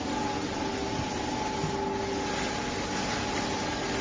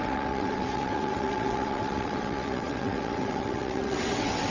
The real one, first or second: first